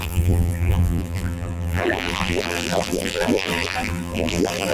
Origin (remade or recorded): remade